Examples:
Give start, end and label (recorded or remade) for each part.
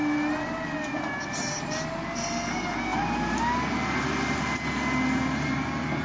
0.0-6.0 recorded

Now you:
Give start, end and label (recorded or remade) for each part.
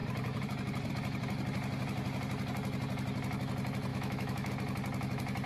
0.0-3.9 recorded; 3.9-4.5 remade; 4.5-5.5 recorded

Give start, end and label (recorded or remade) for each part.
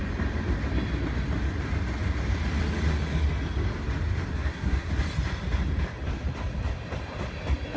0.0-4.3 recorded; 4.3-4.9 remade; 4.9-7.8 recorded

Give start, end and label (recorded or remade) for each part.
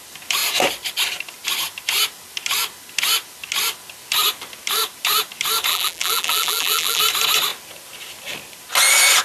0.0-5.7 recorded; 5.7-7.0 remade; 7.0-9.2 recorded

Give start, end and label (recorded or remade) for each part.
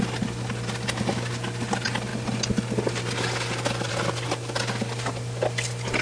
0.0-6.0 recorded